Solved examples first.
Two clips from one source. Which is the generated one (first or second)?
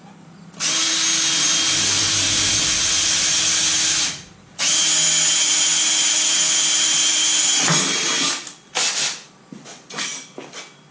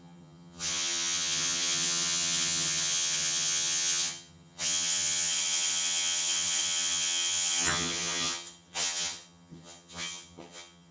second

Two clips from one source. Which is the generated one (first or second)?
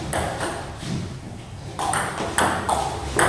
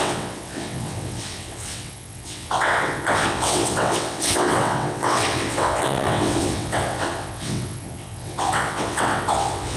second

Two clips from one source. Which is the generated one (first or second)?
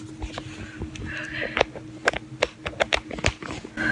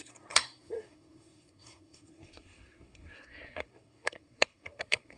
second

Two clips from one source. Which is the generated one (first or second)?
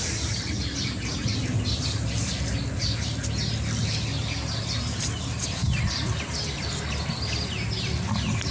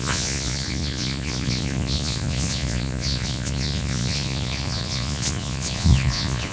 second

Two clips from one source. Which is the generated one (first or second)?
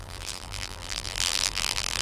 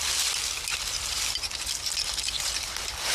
first